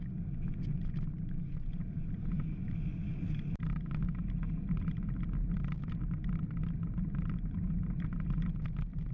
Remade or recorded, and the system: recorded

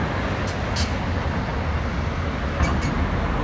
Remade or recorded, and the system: recorded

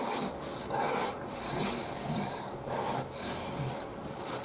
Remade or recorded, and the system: remade, codec, DAC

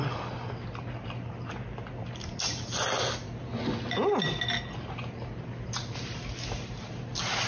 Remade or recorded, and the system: recorded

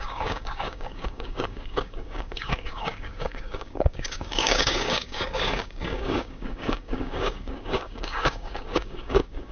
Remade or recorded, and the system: remade, codec, DAC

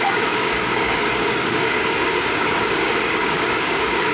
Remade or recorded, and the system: remade, codec, DAC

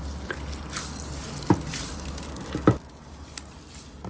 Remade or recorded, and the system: recorded